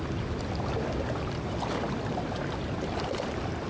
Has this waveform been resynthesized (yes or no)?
no